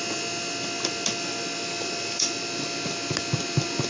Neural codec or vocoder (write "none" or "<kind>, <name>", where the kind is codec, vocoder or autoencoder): none